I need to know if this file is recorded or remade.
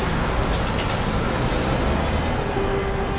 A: recorded